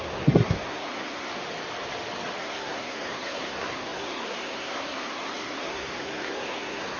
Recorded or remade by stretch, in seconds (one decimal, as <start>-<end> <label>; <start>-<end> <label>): 0.0-1.3 remade; 1.3-2.4 recorded; 2.4-7.0 remade